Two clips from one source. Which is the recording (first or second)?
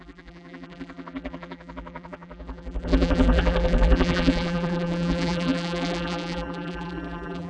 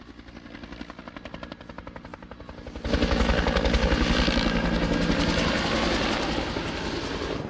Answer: second